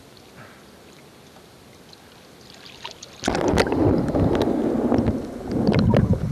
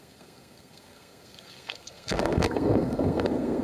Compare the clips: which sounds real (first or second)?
first